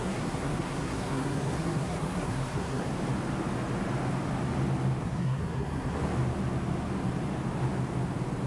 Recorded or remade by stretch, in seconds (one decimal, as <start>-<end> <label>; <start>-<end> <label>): 0.0-2.9 remade; 2.9-5.0 recorded; 5.0-6.0 remade; 6.0-8.5 recorded